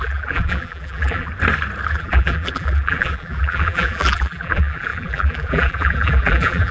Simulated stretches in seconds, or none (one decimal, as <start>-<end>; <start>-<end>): 0.0-1.3; 1.9-6.7